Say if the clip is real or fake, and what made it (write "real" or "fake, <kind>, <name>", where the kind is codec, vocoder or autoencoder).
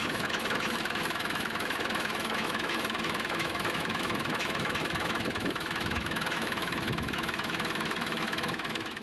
fake, autoencoder, DAC-VAE